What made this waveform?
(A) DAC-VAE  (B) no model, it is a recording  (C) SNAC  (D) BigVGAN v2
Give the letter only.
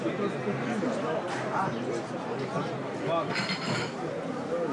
B